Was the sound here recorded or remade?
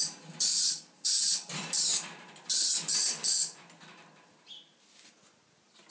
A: recorded